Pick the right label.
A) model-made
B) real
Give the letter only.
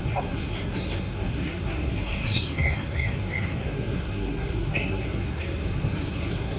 A